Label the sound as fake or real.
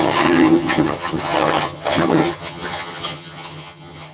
fake